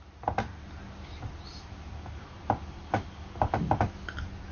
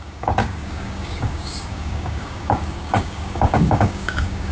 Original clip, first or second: first